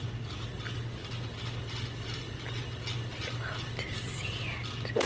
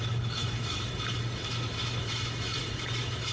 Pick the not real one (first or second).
second